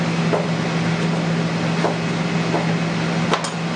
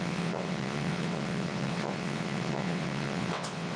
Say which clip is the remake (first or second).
second